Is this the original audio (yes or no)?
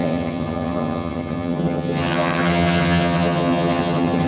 no